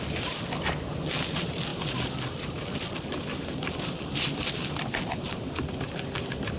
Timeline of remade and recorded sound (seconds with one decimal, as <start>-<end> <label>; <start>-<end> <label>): 0.0-6.6 recorded